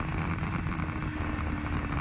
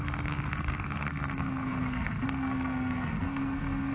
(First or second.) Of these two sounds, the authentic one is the first